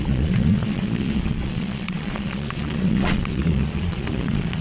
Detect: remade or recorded remade